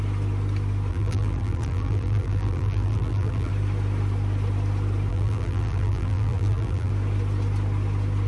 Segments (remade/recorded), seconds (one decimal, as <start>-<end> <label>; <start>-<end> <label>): 0.0-0.9 recorded; 0.9-3.5 remade; 3.5-5.1 recorded; 5.1-6.9 remade; 6.9-8.3 recorded